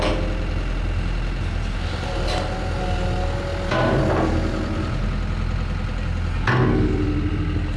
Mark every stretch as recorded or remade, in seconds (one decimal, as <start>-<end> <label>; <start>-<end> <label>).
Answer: 0.0-3.5 recorded; 3.5-4.0 remade; 4.0-7.8 recorded